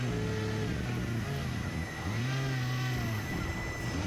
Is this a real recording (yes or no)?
yes